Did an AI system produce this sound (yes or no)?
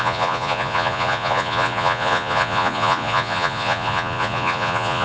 yes